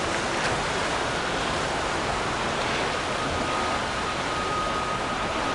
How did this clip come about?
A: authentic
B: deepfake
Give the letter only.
A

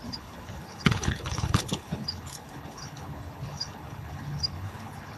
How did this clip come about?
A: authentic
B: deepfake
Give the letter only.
B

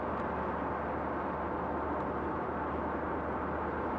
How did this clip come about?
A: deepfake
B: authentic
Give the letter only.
B